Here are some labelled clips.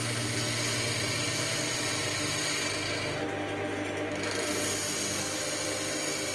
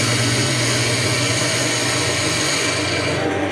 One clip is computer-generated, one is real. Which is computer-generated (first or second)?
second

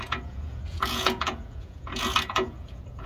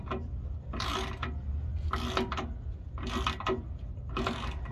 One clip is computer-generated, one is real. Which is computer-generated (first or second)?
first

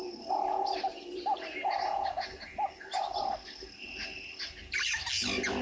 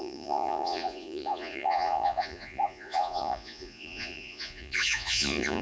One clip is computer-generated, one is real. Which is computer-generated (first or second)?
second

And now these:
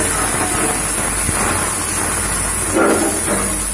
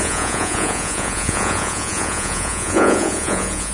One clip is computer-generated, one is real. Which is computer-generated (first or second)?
second